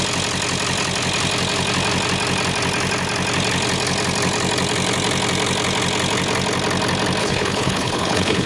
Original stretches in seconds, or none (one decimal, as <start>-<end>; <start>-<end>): 0.0-7.2